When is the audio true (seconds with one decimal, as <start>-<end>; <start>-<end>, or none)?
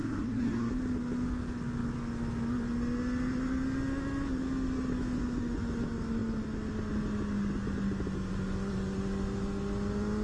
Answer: 0.7-10.2